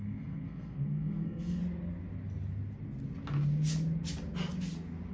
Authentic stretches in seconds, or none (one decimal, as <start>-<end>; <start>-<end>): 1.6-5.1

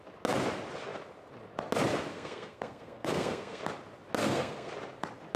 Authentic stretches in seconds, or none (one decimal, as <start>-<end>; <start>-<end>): 0.0-2.1; 3.6-4.2; 4.7-5.4

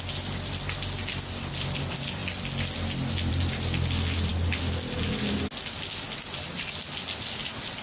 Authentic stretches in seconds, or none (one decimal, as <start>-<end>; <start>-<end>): 0.0-7.8

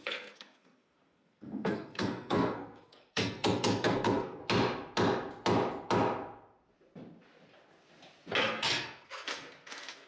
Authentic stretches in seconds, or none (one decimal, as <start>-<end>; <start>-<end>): 4.4-8.4

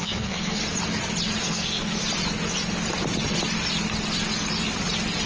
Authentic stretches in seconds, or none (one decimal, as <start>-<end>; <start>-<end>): 0.6-1.4; 2.0-5.3

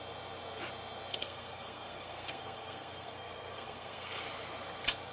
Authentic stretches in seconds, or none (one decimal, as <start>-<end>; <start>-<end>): 0.0-1.1; 4.2-5.1

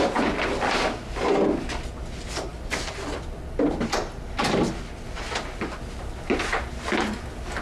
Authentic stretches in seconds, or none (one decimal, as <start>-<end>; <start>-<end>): 0.0-7.6